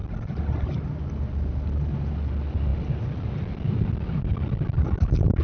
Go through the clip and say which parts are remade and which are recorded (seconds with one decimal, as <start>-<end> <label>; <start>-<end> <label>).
0.0-5.4 recorded